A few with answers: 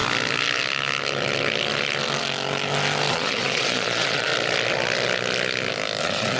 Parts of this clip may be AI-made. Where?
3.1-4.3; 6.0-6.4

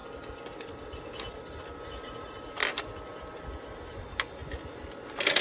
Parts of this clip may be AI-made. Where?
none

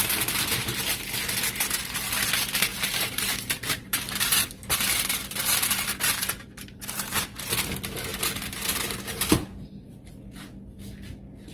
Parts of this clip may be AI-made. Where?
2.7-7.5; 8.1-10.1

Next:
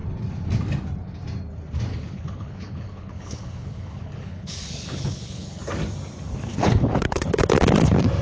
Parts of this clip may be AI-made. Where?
1.9-5.6; 6.5-7.4